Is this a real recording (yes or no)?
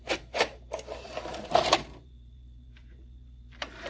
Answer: no